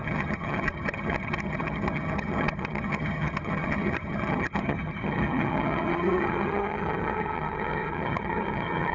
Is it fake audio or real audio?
fake